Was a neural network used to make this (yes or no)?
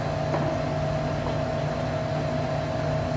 no